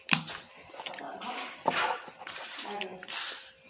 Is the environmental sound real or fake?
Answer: fake